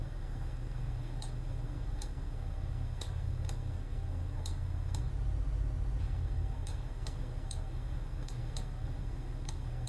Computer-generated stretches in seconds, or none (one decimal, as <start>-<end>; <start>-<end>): 0.0-5.1; 6.0-9.9